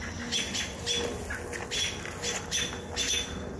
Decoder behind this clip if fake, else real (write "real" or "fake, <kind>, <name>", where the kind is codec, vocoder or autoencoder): real